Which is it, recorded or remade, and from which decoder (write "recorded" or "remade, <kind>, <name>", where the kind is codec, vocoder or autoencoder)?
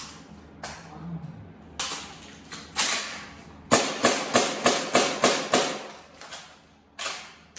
recorded